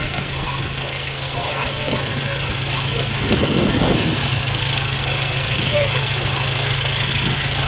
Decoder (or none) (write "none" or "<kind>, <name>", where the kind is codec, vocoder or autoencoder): codec, SNAC